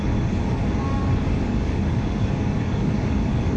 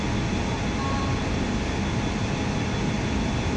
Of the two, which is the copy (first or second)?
first